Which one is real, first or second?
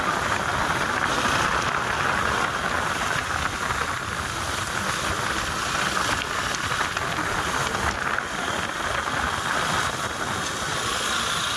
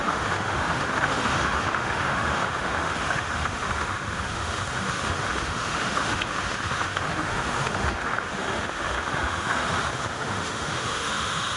first